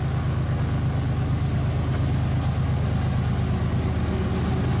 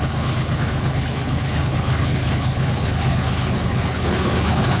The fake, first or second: second